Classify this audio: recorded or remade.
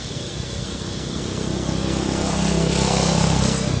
remade